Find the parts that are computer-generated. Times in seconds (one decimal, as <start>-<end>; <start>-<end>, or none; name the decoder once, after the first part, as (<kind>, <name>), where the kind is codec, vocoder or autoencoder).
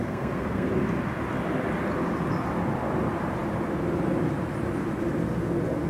0.0-0.7 (codec, SNAC)